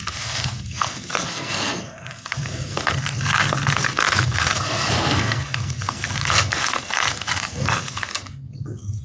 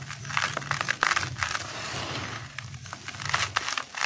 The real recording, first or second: second